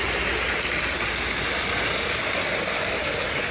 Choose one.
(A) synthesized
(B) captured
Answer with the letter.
B